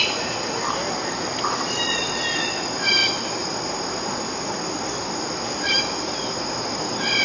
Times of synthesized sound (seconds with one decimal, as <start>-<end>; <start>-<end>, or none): none